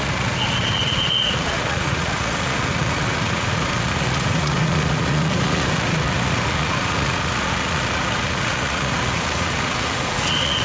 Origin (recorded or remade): remade